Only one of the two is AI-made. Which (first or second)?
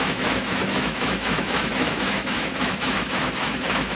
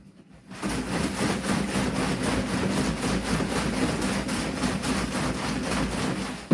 first